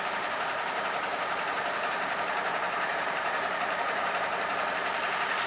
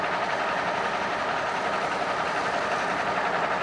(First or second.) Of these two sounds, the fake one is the first